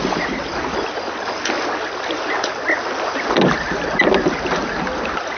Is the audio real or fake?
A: real